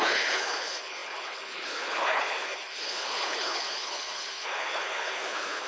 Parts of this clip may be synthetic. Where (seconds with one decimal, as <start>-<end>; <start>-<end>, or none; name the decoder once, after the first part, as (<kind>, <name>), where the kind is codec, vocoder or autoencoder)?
0.0-5.7 (codec, HILCodec)